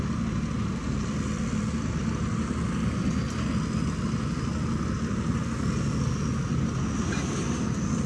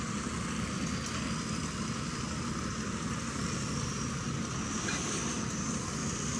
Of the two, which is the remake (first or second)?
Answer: second